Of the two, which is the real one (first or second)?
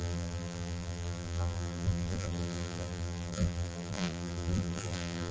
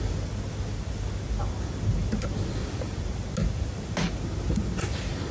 second